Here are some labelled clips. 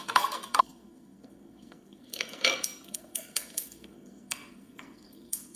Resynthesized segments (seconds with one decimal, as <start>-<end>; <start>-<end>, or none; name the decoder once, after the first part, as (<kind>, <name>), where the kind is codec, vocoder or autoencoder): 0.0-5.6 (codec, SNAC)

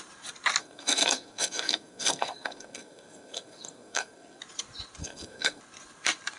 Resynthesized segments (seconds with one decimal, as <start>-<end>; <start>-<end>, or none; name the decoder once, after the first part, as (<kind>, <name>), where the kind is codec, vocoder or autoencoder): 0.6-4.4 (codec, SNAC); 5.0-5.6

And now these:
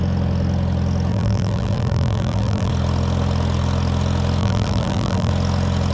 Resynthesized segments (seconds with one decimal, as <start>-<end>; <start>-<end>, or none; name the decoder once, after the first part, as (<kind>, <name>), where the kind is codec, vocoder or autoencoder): 1.1-2.7 (vocoder, BigVGAN v2); 4.4-5.3

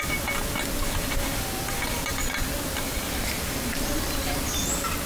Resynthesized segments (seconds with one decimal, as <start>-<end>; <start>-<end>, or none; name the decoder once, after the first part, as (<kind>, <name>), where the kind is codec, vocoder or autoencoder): 0.8-3.9 (vocoder, BigVGAN v2)

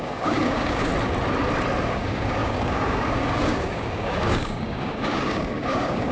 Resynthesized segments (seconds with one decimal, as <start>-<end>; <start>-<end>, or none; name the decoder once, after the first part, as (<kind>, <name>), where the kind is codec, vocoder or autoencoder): 0.0-0.9 (codec, DAC); 1.9-6.1

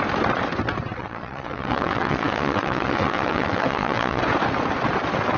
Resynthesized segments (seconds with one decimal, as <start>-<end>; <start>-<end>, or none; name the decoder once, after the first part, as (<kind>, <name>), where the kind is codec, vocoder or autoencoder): 1.0-4.2 (vocoder, WaveNeXt)

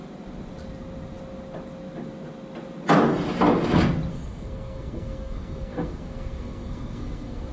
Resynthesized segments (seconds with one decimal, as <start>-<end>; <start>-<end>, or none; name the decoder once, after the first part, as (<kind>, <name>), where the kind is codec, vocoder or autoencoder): 4.1-7.5 (codec, SNAC)